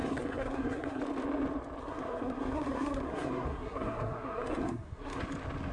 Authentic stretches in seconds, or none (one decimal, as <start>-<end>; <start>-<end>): 1.0-1.8; 5.2-5.7